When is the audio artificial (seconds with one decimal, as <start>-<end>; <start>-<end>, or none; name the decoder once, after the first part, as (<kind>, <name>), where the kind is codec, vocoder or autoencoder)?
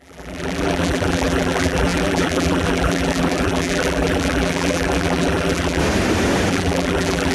0.0-5.8 (vocoder, BigVGAN v2); 6.5-7.3